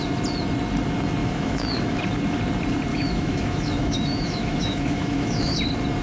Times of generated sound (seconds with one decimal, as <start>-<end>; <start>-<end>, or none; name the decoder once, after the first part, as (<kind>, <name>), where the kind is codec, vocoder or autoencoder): 1.2-2.0 (autoencoder, DAC-VAE); 2.9-5.6